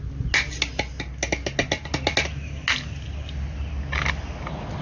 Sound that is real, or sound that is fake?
real